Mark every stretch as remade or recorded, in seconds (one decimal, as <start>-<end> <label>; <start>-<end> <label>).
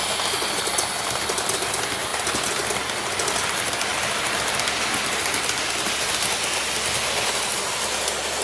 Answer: 0.0-8.4 recorded